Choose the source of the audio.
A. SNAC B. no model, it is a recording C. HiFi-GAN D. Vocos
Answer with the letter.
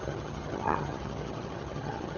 C